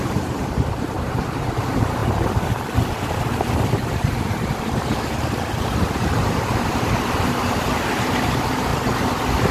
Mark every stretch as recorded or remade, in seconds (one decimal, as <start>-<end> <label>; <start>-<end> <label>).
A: 0.0-2.0 remade; 2.0-6.0 recorded; 6.0-8.7 remade; 8.7-9.5 recorded